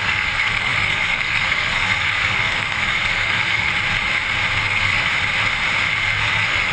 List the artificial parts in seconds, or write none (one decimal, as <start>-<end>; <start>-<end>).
0.0-3.7; 4.6-5.1; 6.0-6.7